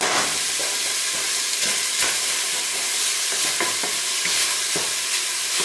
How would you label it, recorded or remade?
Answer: recorded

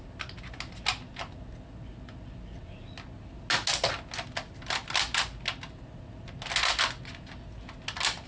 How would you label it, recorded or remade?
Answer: recorded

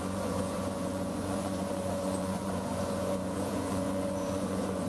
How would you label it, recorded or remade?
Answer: remade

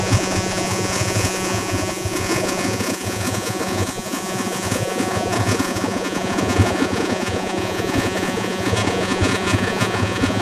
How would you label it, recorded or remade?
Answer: remade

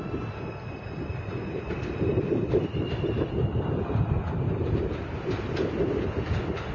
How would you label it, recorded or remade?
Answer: recorded